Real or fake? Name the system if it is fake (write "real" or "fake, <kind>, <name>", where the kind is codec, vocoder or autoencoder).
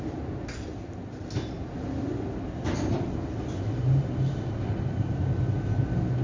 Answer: real